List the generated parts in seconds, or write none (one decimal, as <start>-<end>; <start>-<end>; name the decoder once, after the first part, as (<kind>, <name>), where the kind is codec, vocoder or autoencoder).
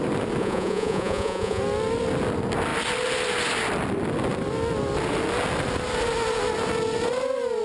0.4-1.6 (vocoder, Vocos)